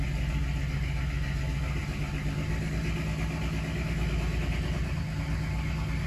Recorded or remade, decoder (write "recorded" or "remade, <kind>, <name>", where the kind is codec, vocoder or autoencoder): recorded